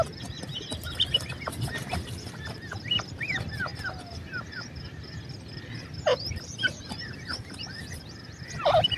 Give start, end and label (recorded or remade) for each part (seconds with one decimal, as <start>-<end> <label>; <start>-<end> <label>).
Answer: 0.0-6.1 recorded; 6.1-9.0 remade